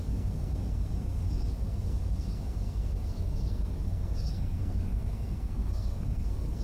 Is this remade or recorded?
remade